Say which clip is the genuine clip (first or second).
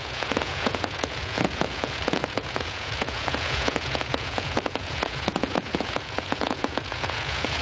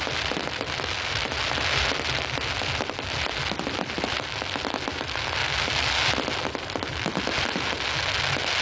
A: second